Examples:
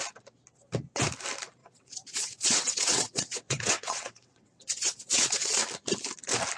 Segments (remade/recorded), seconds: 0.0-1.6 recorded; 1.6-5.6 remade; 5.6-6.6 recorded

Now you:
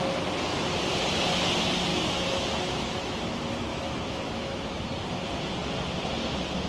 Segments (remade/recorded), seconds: 0.0-1.9 recorded; 1.9-3.2 remade; 3.2-3.7 recorded; 3.7-4.8 remade; 4.8-6.7 recorded

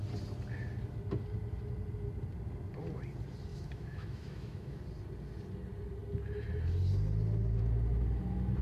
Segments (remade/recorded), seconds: 0.0-3.5 recorded; 3.5-4.8 remade; 4.8-8.6 recorded

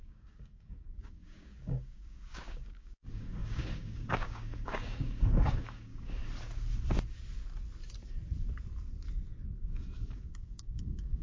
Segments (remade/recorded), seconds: 0.0-6.2 remade; 6.2-9.6 recorded; 9.6-11.2 remade

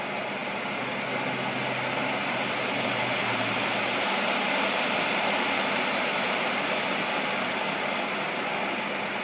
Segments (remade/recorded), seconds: 0.0-9.2 recorded

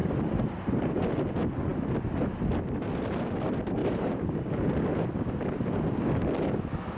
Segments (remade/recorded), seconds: 0.0-1.1 remade; 1.1-3.8 recorded; 3.8-4.5 remade; 4.5-7.0 recorded